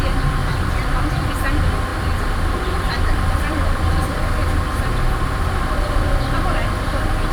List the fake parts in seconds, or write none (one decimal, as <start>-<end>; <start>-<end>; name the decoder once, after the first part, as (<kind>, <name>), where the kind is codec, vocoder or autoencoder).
0.4-1.3 (vocoder, BigVGAN v2); 1.9-4.2